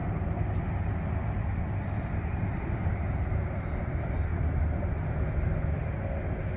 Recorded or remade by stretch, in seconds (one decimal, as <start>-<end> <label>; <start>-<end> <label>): 0.0-6.6 recorded